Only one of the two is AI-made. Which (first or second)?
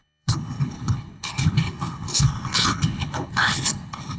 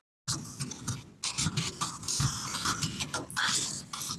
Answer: first